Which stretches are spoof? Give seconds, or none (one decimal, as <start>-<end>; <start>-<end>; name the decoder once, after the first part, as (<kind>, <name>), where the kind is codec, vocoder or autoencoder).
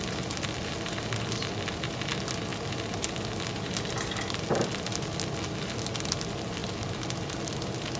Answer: none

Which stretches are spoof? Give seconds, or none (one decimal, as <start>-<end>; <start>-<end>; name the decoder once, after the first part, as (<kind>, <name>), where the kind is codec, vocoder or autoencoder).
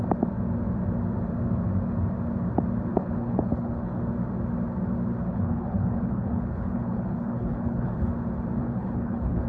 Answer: 2.9-4.0 (codec, HILCodec); 5.2-8.1; 8.6-9.5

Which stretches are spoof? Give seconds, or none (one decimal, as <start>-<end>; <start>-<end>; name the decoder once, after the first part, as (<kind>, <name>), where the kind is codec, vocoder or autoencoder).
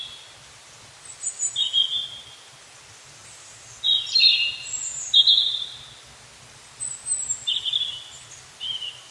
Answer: none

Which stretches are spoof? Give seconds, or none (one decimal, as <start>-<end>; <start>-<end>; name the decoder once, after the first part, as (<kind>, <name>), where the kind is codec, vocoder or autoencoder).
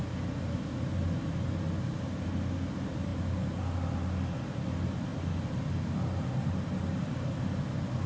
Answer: none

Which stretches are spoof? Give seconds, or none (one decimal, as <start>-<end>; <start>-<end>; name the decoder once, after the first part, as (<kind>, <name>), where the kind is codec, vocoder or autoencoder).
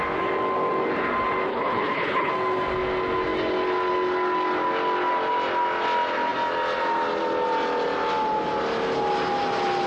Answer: 1.5-2.3 (codec, HILCodec)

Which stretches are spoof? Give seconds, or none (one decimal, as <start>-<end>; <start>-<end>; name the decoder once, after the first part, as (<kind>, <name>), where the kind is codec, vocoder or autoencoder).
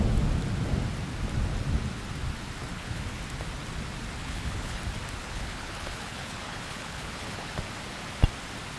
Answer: 2.7-3.2 (codec, HILCodec); 4.2-4.8; 5.2-7.5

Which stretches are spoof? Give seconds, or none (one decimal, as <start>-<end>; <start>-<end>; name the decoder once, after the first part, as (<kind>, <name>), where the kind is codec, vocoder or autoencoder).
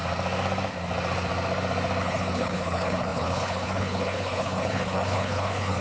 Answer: 2.0-5.8 (codec, HILCodec)